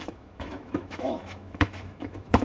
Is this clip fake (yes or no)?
yes